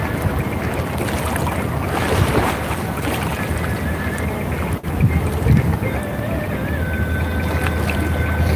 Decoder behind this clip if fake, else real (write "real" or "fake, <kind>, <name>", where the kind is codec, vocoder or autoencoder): real